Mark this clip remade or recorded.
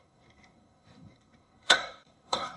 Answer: remade